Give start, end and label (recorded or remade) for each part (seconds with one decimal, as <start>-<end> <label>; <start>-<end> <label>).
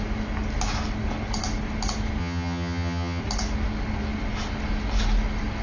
0.0-2.2 recorded; 2.2-3.2 remade; 3.2-5.6 recorded